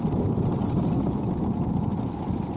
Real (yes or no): yes